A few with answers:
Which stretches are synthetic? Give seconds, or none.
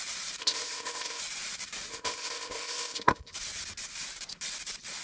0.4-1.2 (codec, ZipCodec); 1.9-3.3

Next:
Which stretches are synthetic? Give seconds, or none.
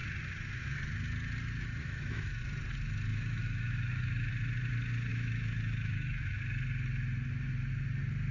1.8-2.4 (autoencoder, DAC-VAE); 3.1-4.3; 5.1-6.4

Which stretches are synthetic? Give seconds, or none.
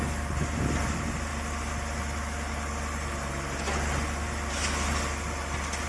none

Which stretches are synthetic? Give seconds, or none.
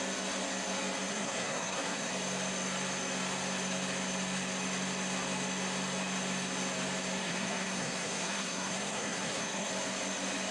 1.1-2.1 (codec, SNAC); 7.2-9.7